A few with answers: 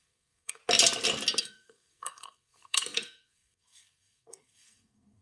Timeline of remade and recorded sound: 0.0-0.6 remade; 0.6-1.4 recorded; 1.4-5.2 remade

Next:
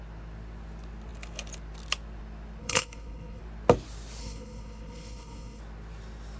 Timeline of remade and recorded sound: 0.0-2.6 recorded; 2.6-3.4 remade; 3.4-4.2 recorded; 4.2-5.6 remade; 5.6-6.4 recorded

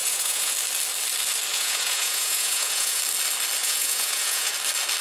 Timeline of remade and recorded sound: 0.0-0.5 remade; 0.5-1.5 recorded; 1.5-3.0 remade; 3.0-3.6 recorded; 3.6-4.5 remade; 4.5-5.0 recorded

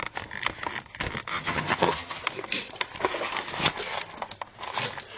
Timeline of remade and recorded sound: 0.0-1.3 recorded; 1.3-2.2 remade; 2.2-5.2 recorded

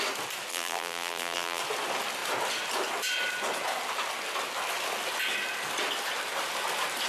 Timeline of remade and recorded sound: 0.0-0.5 recorded; 0.5-1.6 remade; 1.6-7.1 recorded

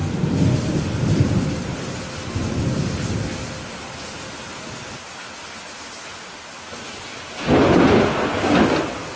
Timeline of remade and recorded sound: 0.0-9.2 recorded

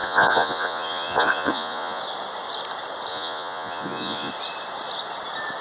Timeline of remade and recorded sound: 0.0-2.0 remade; 2.0-3.1 recorded; 3.1-4.3 remade; 4.3-5.6 recorded